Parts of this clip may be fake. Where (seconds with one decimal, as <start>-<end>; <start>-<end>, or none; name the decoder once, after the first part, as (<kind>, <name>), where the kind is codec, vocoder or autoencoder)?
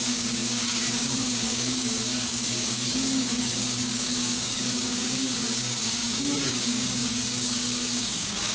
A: 0.0-8.5 (codec, DAC)